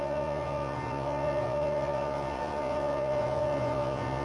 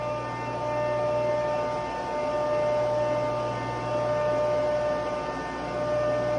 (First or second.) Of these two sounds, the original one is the second